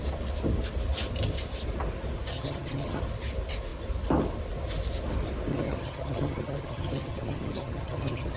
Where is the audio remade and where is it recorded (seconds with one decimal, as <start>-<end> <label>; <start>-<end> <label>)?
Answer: 0.0-2.3 recorded; 2.3-3.0 remade; 3.0-5.5 recorded; 5.5-8.4 remade